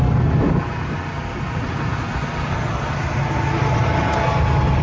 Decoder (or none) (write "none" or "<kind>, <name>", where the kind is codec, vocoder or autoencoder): none